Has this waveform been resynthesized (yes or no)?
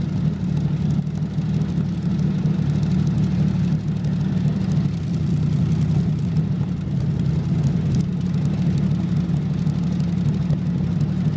no